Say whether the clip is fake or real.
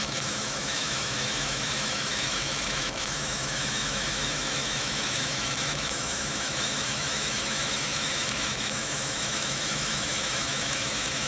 fake